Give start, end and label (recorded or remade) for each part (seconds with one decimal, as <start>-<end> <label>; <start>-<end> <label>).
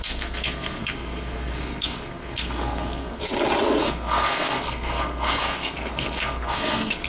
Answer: 0.0-3.2 remade; 3.2-3.8 recorded; 3.8-7.1 remade